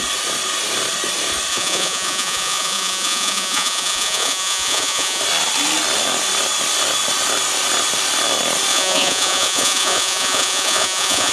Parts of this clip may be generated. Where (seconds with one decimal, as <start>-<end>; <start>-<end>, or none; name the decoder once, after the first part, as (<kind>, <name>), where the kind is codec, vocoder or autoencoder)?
1.5-5.2 (vocoder, Vocos); 8.7-11.3